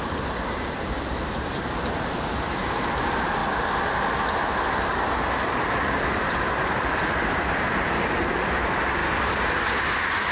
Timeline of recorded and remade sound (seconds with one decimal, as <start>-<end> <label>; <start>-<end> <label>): 0.0-3.4 remade; 3.4-7.6 recorded; 7.6-9.0 remade; 9.0-9.8 recorded; 9.8-10.3 remade